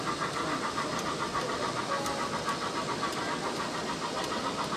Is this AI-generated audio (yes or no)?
no